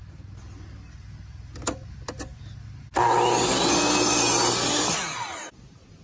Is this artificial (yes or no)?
no